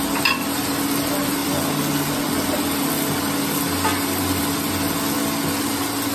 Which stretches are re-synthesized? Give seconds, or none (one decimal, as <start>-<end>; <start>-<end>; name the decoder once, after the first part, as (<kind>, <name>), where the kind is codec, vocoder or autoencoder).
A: none